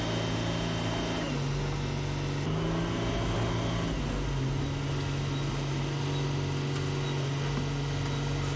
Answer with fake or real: real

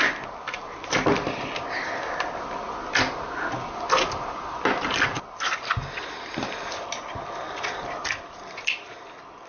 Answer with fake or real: real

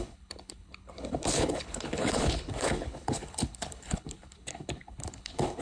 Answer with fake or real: fake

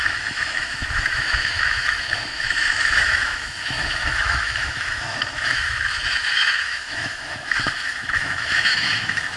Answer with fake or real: fake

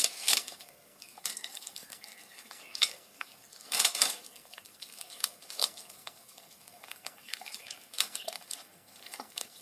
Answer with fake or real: fake